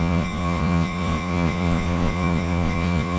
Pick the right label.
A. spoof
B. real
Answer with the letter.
A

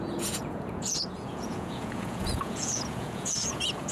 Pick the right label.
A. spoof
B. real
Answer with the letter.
A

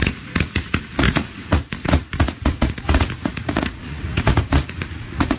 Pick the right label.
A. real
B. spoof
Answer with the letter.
B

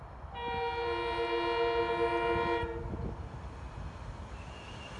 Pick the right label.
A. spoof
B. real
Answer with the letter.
B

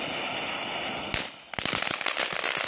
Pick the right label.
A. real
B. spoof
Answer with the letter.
A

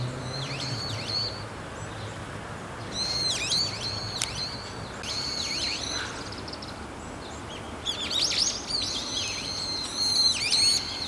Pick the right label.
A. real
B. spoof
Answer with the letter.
A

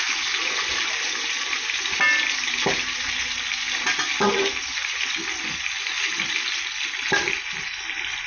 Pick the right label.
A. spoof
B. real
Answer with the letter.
B